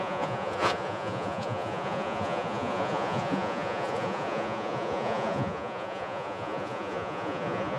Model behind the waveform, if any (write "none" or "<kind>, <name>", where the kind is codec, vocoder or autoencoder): vocoder, Vocos